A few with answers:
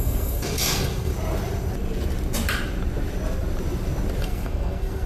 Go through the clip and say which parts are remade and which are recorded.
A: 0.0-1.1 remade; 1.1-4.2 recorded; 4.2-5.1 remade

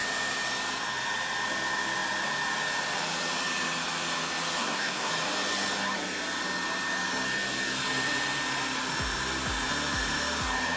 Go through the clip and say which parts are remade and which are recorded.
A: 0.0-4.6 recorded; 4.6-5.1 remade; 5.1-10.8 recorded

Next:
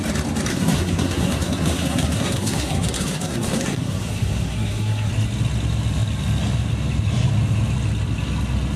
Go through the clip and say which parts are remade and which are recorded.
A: 0.0-0.5 recorded; 0.5-5.1 remade; 5.1-8.8 recorded

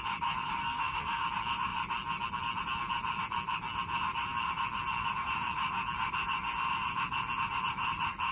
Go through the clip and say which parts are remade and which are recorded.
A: 0.0-0.6 recorded; 0.6-1.2 remade; 1.2-8.3 recorded